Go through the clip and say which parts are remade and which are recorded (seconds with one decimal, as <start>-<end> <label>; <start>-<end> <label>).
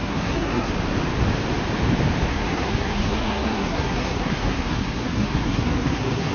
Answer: 0.0-0.7 remade; 0.7-2.3 recorded; 2.3-6.3 remade